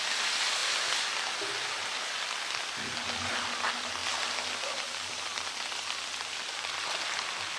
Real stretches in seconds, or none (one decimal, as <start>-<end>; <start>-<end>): 0.0-7.6